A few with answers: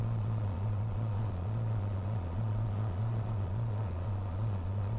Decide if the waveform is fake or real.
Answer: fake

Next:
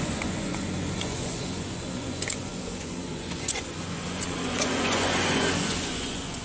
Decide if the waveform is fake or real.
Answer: fake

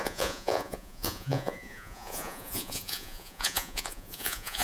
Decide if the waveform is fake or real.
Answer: fake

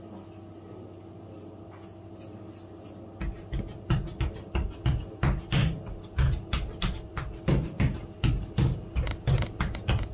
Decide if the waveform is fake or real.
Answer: real